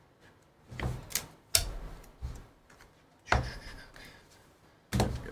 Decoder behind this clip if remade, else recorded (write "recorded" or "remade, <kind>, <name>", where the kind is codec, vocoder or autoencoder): recorded